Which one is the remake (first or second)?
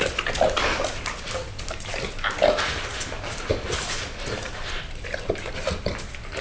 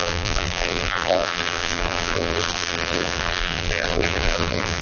second